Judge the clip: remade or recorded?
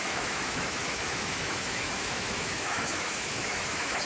remade